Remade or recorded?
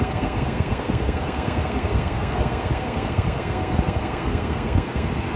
remade